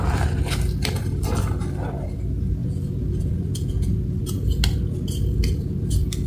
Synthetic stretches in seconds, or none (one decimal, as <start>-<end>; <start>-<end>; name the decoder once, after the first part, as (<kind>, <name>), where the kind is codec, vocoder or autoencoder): 2.6-4.0 (vocoder, Vocos)

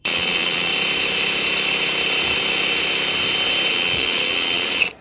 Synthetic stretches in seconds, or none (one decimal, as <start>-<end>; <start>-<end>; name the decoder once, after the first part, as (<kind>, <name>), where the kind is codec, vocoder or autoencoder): 0.0-0.7 (vocoder, Vocos); 3.7-5.0

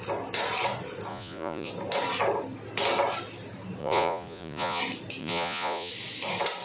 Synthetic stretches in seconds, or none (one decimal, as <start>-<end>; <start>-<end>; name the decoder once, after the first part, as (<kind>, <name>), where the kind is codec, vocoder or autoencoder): 1.1-1.7 (vocoder, Vocos); 3.8-4.8; 5.2-5.9

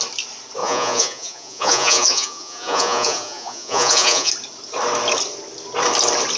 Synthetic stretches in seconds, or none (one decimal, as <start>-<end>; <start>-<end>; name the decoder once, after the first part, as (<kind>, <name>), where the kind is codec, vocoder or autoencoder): 0.6-4.3 (vocoder, Vocos)

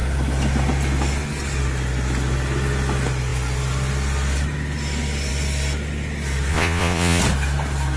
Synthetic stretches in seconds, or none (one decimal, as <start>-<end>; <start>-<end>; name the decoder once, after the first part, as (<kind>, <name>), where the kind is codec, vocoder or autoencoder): 6.5-7.2 (vocoder, Vocos)